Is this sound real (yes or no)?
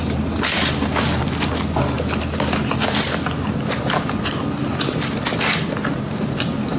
yes